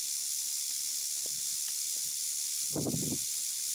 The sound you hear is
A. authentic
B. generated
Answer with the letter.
A